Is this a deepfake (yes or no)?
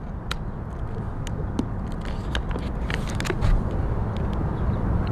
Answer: no